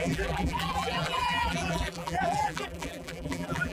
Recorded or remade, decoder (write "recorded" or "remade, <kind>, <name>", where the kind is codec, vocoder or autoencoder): remade, vocoder, BigVGAN v2